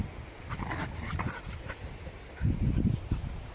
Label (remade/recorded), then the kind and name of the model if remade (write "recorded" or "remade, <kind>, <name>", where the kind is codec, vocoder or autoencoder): remade, vocoder, BigVGAN v2